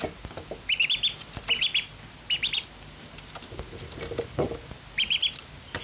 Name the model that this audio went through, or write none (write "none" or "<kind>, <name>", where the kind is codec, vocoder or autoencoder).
none